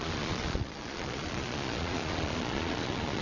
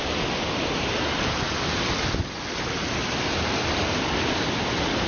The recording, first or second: second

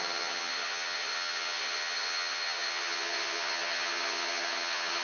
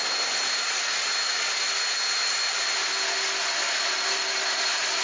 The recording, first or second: second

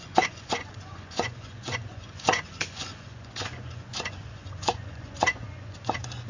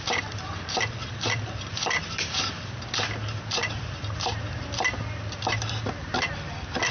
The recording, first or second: second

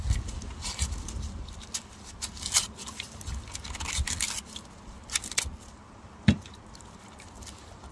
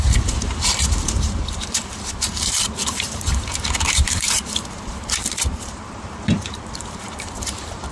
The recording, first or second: first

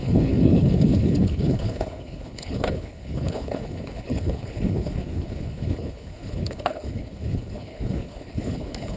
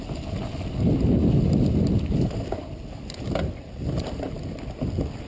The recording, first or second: second